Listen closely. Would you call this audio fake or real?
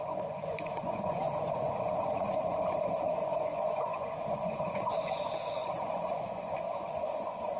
fake